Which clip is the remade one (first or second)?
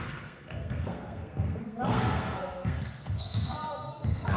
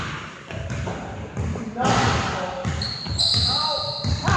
first